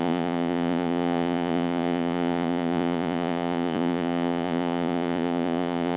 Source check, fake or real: fake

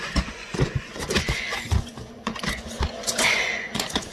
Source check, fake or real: fake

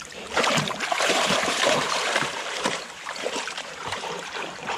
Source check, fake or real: fake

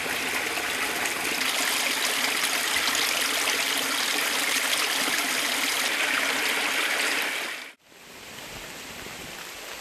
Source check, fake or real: real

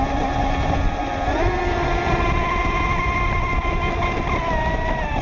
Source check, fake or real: real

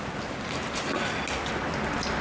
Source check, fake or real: real